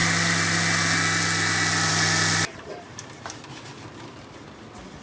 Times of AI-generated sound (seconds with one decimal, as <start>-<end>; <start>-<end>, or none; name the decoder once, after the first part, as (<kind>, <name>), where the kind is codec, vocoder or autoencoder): 2.5-3.4 (vocoder, BigVGAN v2)